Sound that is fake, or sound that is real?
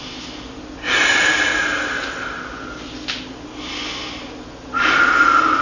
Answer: real